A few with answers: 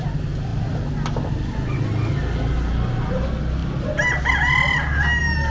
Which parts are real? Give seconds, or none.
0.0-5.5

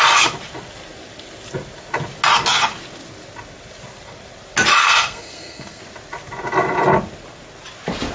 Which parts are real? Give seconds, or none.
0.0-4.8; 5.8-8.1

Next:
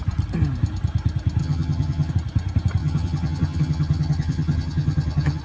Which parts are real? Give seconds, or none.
0.0-1.4; 2.1-2.8

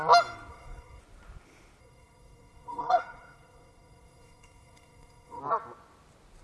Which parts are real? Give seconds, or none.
0.0-0.5; 1.0-1.8; 5.4-6.4